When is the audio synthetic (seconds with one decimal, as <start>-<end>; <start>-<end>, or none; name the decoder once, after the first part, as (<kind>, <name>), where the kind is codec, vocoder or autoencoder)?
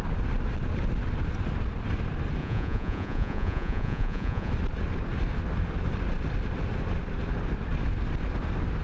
2.4-4.5 (vocoder, Vocos)